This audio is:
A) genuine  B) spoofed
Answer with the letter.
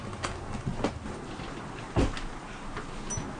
A